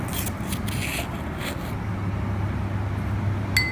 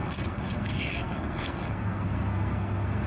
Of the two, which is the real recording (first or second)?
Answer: first